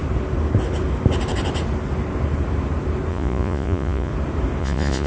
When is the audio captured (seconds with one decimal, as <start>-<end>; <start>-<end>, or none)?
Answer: 0.0-3.1; 4.1-4.6